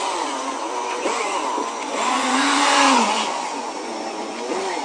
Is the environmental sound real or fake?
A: fake